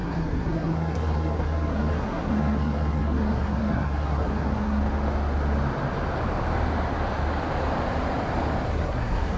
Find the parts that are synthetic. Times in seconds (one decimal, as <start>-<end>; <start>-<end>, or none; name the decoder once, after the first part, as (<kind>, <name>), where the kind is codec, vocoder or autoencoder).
0.0-4.8 (codec, SNAC); 8.7-9.4